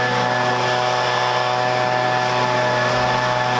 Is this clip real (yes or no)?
yes